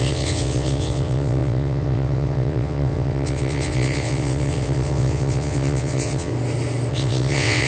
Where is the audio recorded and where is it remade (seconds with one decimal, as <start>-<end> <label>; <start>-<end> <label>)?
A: 0.0-6.3 remade; 6.3-6.9 recorded; 6.9-7.7 remade